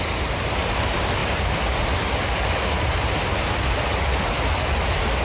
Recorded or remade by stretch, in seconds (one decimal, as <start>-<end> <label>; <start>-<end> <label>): 0.0-5.2 recorded